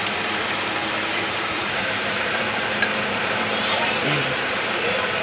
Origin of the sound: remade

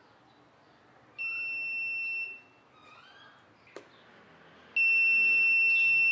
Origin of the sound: recorded